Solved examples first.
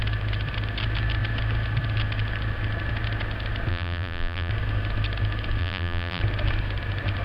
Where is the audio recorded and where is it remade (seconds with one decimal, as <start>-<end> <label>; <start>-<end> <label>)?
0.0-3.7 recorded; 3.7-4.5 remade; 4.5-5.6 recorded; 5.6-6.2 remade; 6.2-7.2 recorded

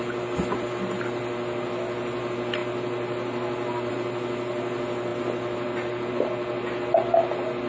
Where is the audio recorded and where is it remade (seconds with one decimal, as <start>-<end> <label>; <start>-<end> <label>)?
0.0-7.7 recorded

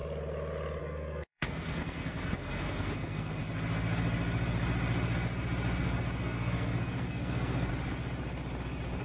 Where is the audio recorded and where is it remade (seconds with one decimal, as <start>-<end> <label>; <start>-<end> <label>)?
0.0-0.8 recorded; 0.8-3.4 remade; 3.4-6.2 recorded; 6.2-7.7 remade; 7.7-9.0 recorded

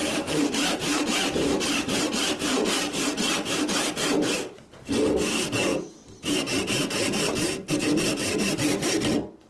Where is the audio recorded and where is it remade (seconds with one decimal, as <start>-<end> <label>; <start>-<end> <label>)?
0.0-3.6 remade; 3.6-5.7 recorded; 5.7-8.5 remade; 8.5-9.5 recorded

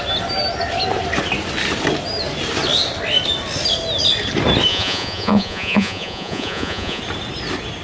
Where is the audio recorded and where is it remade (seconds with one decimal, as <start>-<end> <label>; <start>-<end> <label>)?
0.0-4.7 recorded; 4.7-7.0 remade; 7.0-7.8 recorded

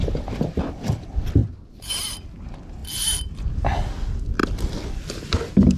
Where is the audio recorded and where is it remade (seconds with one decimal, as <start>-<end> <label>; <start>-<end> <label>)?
0.0-1.4 recorded; 1.4-1.9 remade; 1.9-5.8 recorded

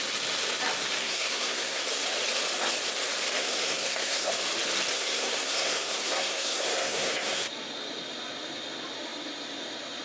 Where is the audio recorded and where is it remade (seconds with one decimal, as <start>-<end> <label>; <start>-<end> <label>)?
0.0-1.0 recorded; 1.0-1.8 remade; 1.8-3.4 recorded; 3.4-4.3 remade; 4.3-4.9 recorded; 4.9-7.5 remade; 7.5-10.0 recorded

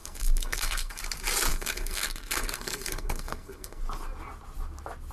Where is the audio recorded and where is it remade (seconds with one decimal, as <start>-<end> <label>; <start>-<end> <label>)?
0.0-1.0 remade; 1.0-1.5 recorded; 1.5-3.8 remade; 3.8-5.1 recorded